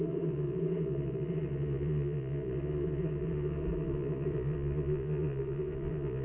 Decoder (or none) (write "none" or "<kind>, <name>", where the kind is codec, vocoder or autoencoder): vocoder, Vocos